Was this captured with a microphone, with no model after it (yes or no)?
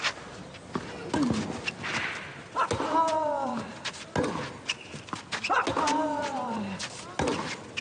yes